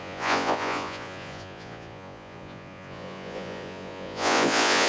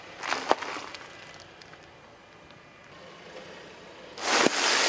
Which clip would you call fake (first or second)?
first